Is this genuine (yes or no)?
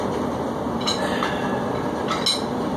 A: yes